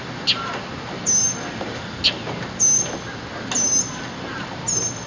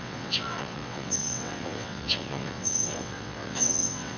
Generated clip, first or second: second